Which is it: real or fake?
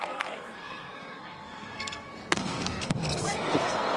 fake